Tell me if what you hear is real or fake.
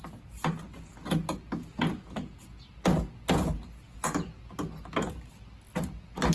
real